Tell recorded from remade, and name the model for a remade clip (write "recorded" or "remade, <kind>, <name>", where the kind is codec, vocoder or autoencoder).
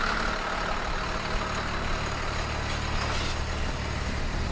recorded